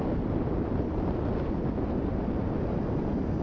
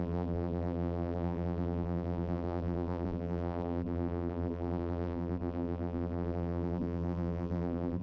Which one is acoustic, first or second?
first